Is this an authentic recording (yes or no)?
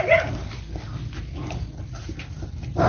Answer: yes